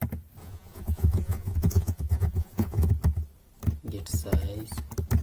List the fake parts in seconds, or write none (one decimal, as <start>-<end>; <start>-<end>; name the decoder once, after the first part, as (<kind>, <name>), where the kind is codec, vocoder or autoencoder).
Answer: 0.4-2.9 (vocoder, Vocos)